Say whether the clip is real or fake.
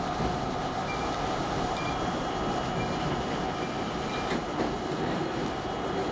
real